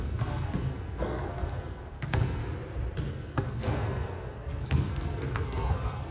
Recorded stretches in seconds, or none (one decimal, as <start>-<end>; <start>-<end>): 2.4-3.1